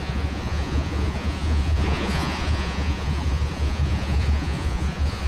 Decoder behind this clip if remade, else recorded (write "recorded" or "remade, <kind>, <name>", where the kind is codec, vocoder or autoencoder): remade, vocoder, Vocos